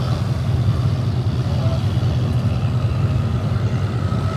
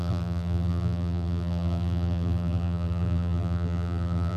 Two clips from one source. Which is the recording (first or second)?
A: first